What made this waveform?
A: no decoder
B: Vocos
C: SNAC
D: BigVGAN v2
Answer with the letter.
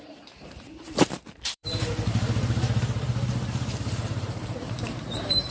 D